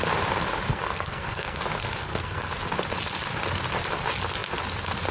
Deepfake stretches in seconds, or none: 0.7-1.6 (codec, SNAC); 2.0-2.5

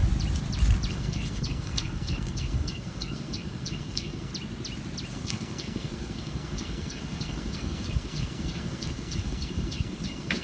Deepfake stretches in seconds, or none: 0.9-4.3 (codec, SNAC); 5.1-10.4

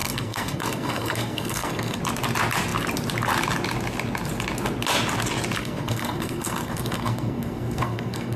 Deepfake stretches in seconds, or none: 0.0-2.0 (codec, SNAC); 5.6-8.4

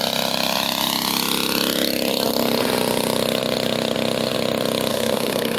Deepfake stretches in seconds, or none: 4.9-5.6 (codec, SNAC)

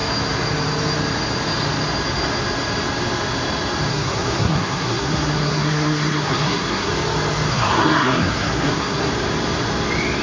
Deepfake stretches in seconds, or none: 3.9-6.9 (codec, SNAC); 7.5-9.1

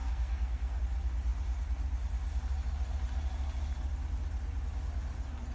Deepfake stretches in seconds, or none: 0.0-0.8 (codec, SNAC)

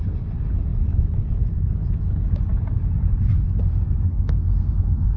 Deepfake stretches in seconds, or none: 4.1-5.2 (codec, SNAC)

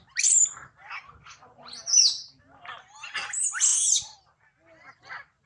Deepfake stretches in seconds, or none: none